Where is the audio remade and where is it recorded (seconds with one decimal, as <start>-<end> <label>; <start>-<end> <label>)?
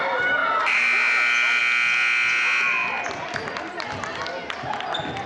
0.0-5.3 recorded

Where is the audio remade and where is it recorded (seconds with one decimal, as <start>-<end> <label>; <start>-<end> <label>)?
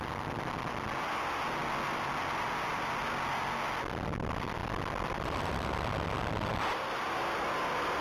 0.0-8.0 recorded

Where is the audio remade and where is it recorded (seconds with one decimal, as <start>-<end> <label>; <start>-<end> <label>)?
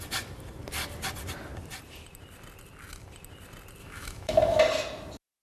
0.0-3.8 recorded; 3.8-4.6 remade; 4.6-5.4 recorded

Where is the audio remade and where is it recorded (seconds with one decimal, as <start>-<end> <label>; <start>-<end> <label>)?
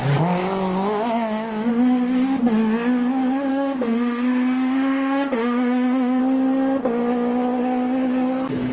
0.0-3.5 recorded; 3.5-6.2 remade; 6.2-8.7 recorded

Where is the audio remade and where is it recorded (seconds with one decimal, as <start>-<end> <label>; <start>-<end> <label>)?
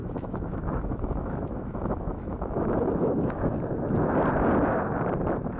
0.0-3.4 remade; 3.4-5.6 recorded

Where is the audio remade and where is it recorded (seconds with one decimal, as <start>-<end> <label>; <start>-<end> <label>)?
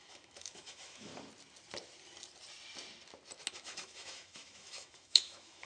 0.0-1.1 remade; 1.1-3.5 recorded; 3.5-5.6 remade